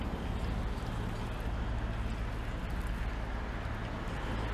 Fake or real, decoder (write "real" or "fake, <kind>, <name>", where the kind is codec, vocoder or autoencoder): real